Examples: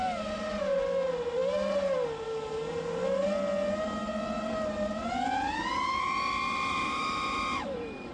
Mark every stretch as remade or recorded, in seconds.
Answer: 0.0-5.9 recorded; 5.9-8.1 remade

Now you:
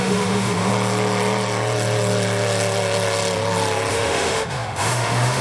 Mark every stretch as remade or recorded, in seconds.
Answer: 0.0-0.7 remade; 0.7-3.9 recorded; 3.9-5.4 remade

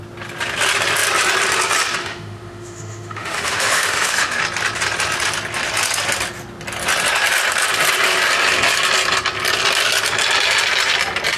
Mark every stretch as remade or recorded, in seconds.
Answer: 0.0-2.0 recorded; 2.0-4.4 remade; 4.4-11.4 recorded

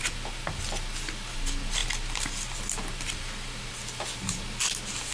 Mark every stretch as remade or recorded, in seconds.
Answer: 0.0-5.1 recorded

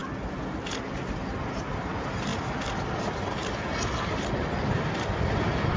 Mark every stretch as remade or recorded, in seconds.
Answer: 0.0-5.8 recorded

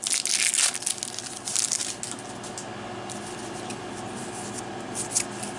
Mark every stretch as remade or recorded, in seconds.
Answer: 0.0-5.6 recorded

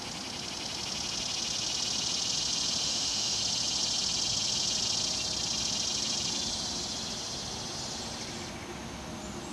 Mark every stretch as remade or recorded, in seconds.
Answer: 0.0-2.8 recorded; 2.8-3.4 remade; 3.4-9.5 recorded

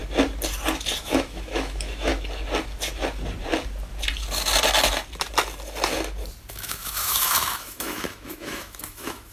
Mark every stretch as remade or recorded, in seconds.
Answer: 0.0-1.0 recorded; 1.0-2.1 remade; 2.1-6.5 recorded; 6.5-9.3 remade